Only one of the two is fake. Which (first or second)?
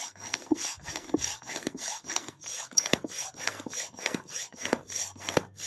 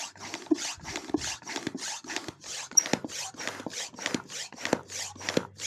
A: first